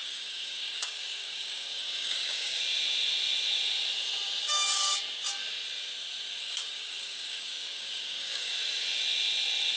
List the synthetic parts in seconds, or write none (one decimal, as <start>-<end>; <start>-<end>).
0.0-2.6; 4.4-5.0; 6.4-8.5

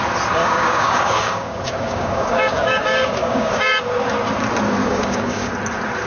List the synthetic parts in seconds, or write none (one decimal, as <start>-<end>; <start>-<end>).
0.4-3.8; 4.8-5.5

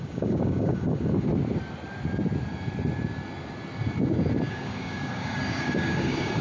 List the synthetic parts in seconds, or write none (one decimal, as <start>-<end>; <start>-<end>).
0.0-1.3; 4.5-6.4

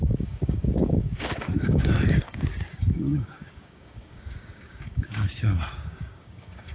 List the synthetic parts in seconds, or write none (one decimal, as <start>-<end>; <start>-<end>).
0.0-6.7

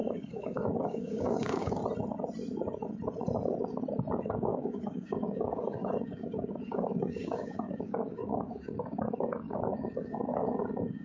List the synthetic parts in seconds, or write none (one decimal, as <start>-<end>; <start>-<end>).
0.0-1.8; 4.2-11.0